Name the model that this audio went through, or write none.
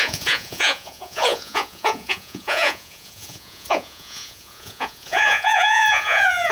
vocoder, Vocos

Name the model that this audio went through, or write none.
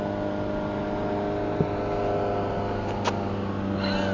none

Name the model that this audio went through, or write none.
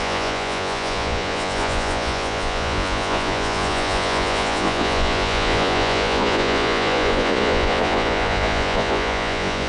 vocoder, Vocos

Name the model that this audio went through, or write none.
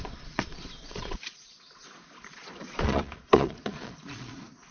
vocoder, Vocos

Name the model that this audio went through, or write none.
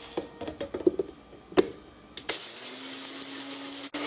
none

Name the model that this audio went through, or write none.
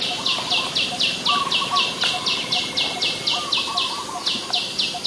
none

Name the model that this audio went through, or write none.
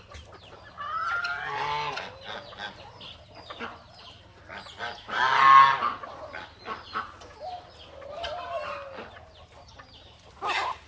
none